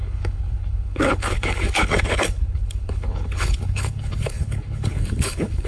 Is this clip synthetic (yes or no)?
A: yes